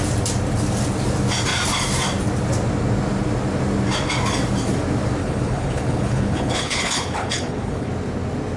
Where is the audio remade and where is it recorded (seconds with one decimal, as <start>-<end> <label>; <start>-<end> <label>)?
0.0-5.2 recorded; 5.2-7.9 remade; 7.9-8.6 recorded